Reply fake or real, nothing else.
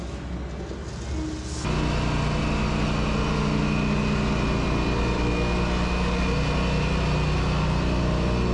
real